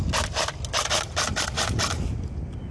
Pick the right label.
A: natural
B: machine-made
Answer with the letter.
A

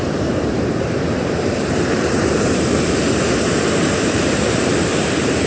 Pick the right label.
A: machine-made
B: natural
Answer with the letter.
A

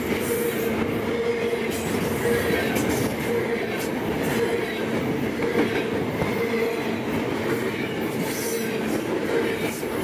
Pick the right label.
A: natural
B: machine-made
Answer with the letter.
A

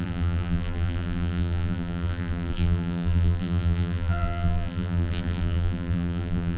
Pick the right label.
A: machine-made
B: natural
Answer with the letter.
A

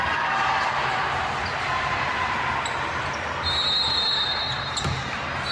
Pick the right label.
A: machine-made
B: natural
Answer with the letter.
B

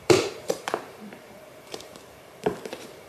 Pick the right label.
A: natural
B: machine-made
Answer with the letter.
B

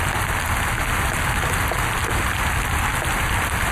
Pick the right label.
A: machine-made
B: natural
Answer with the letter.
B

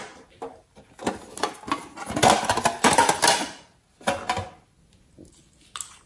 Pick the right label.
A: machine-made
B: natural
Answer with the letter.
B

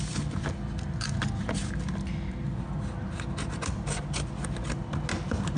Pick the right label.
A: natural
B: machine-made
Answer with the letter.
A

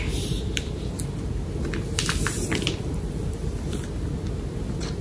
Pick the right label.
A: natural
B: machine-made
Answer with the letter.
A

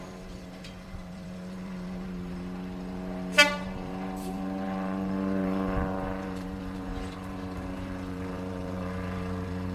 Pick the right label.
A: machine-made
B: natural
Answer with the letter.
A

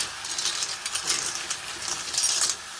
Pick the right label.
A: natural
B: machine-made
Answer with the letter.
A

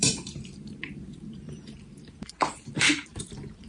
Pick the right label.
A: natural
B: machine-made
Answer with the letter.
B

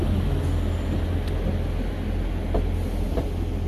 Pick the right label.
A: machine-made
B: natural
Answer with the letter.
B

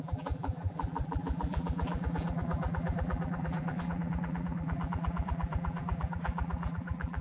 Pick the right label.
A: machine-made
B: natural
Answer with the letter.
A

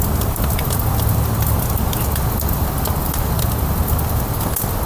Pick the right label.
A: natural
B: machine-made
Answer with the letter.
A